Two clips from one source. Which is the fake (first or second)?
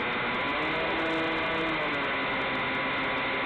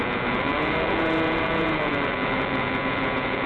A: second